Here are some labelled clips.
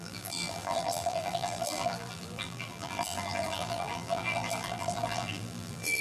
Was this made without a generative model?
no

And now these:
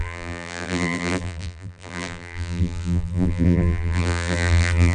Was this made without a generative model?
no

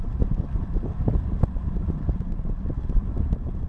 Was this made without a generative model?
no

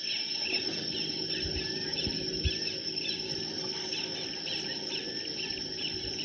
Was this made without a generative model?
yes